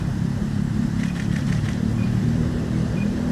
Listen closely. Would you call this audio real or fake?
fake